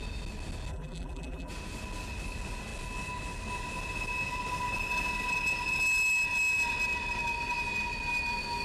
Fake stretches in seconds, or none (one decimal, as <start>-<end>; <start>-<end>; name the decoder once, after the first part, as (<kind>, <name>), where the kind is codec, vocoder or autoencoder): 0.7-1.5 (vocoder, BigVGAN v2)